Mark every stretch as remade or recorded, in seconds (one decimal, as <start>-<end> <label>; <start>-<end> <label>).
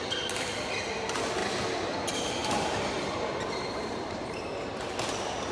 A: 0.0-2.4 recorded; 2.4-4.7 remade; 4.7-5.5 recorded